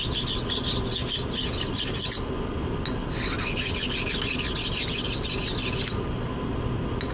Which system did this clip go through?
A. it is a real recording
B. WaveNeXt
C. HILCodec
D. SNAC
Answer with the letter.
A